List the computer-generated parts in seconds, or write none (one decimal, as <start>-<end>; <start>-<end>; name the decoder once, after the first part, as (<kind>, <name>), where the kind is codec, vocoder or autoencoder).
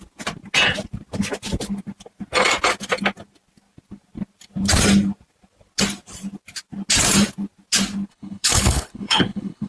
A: 8.1-9.7 (codec, HILCodec)